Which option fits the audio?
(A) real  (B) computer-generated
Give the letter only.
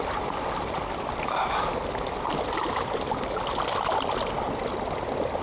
A